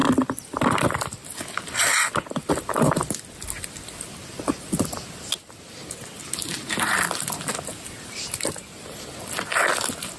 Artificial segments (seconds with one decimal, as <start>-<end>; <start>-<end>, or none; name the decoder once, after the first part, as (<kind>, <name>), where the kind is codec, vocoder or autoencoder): none